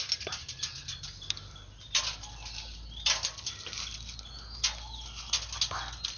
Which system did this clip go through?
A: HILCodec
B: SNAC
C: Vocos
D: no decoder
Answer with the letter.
D